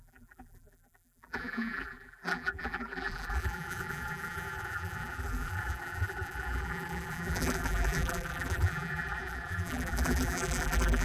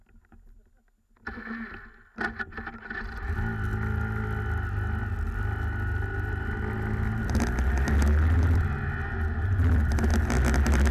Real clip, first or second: second